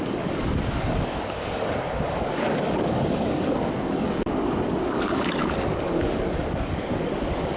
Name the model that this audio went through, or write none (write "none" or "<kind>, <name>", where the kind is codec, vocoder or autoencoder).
codec, DAC